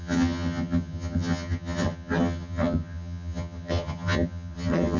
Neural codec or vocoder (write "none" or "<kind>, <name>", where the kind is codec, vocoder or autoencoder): vocoder, HiFi-GAN